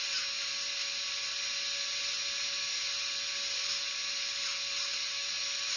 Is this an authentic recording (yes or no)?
yes